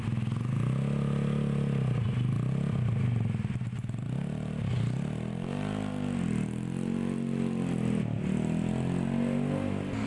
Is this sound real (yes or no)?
yes